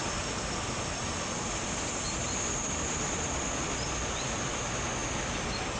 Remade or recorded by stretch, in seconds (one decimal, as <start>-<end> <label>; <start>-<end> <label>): 0.0-3.4 remade; 3.4-5.0 recorded; 5.0-5.8 remade